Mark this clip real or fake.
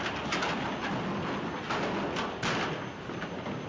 real